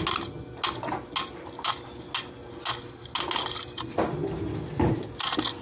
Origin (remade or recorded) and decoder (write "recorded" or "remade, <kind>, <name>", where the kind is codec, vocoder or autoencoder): recorded